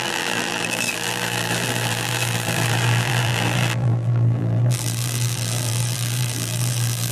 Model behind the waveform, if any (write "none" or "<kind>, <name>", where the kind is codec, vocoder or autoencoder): vocoder, BigVGAN v2